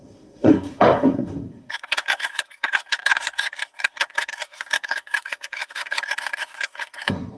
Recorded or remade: remade